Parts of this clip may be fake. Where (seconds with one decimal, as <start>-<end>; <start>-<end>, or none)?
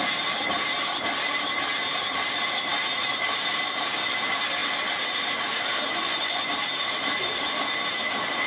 5.9-6.5